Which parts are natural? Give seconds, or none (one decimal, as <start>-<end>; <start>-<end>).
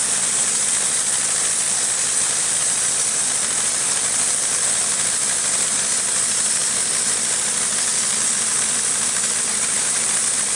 6.6-7.4; 7.9-8.6